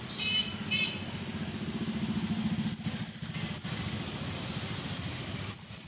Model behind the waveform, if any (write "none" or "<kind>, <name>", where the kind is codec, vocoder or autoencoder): none